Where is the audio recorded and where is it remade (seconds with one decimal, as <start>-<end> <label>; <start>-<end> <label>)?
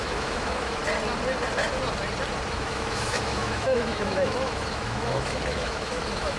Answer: 0.0-0.8 remade; 0.8-2.5 recorded; 2.5-6.4 remade